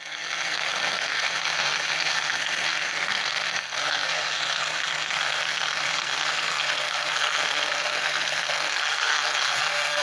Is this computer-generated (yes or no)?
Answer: yes